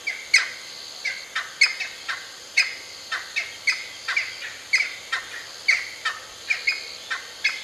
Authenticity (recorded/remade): recorded